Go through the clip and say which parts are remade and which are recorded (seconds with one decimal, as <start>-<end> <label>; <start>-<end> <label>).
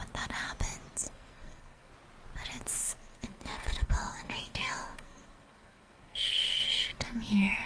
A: 0.0-0.9 recorded; 0.9-1.9 remade; 1.9-2.8 recorded; 2.8-7.7 remade